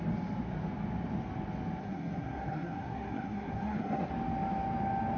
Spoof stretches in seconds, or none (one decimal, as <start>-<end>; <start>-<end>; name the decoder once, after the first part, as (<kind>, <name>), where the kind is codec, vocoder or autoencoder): 1.8-4.1 (codec, SNAC)